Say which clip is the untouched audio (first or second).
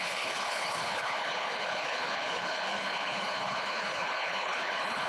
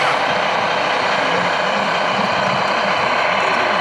second